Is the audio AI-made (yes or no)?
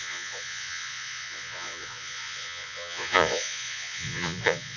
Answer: yes